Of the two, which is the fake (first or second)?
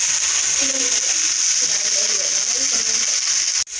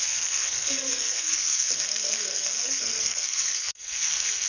second